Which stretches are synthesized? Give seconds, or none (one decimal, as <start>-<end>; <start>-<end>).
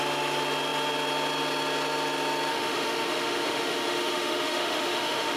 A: 2.5-5.4